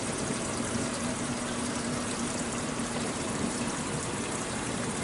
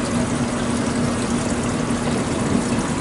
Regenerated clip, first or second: first